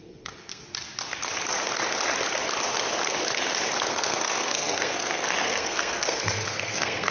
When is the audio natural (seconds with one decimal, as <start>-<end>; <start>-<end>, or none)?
0.6-3.9